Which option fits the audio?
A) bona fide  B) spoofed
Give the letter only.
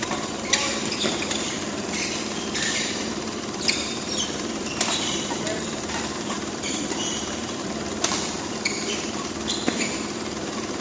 B